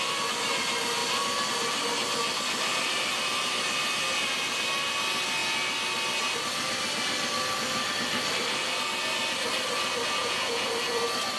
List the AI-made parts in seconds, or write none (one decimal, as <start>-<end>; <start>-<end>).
10.2-10.7